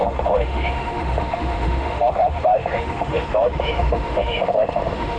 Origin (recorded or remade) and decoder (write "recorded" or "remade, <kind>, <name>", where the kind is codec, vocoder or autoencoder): remade, autoencoder, DAC-VAE